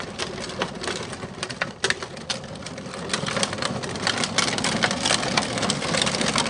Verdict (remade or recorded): recorded